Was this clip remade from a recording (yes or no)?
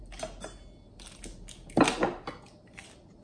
no